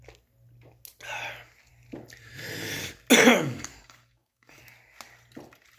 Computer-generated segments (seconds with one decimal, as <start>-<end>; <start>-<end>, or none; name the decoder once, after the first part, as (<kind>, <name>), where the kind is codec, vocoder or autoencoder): 3.3-4.6 (codec, DAC)